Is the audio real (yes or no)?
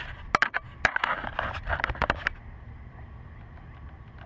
yes